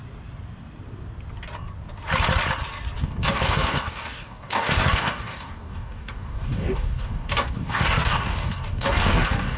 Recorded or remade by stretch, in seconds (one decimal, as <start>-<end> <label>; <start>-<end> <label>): 0.0-3.0 recorded; 3.0-9.6 remade